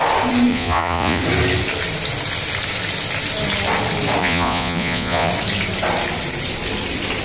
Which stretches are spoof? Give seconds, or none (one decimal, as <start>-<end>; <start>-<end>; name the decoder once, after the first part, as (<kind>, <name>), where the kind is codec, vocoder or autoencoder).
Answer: 0.5-1.2 (vocoder, Vocos); 4.2-5.3